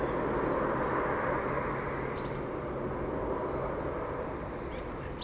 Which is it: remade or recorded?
recorded